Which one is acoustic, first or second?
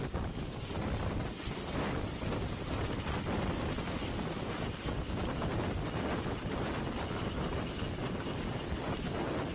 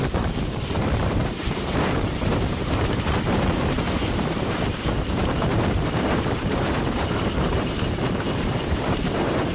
first